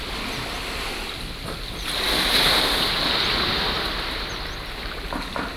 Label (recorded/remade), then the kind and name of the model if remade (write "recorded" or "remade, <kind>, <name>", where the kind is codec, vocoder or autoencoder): recorded